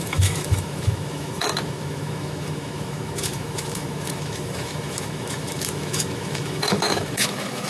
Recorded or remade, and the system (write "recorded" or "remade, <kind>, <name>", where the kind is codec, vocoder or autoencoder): remade, autoencoder, DAC-VAE